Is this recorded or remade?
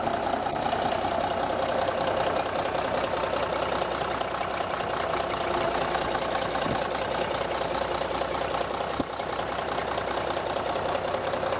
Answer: recorded